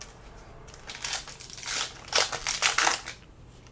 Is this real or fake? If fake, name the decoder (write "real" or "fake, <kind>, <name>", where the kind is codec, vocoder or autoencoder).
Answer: real